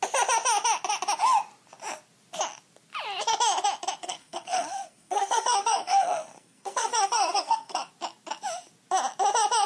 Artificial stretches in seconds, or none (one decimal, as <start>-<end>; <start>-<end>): 4.0-7.9